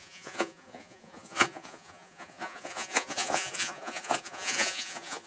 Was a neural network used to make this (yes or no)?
yes